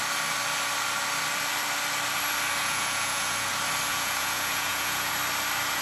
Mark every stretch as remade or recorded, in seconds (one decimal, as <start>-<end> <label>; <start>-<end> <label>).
0.0-2.6 recorded; 2.6-3.5 remade; 3.5-3.9 recorded; 3.9-5.1 remade; 5.1-5.8 recorded